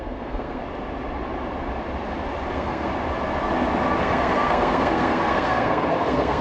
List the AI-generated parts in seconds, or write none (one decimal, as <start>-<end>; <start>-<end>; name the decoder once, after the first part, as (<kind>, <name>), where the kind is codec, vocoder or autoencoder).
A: 0.0-0.6 (codec, SNAC); 2.5-2.9; 4.0-6.4